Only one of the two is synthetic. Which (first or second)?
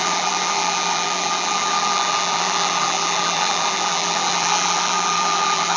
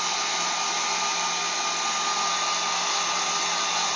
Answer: first